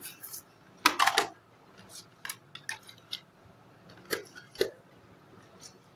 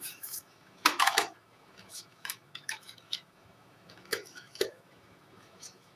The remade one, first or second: second